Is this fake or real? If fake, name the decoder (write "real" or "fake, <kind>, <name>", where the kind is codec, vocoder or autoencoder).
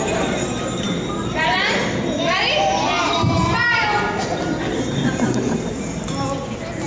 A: fake, vocoder, BigVGAN v2